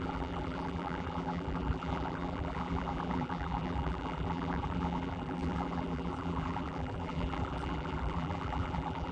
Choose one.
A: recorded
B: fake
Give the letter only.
B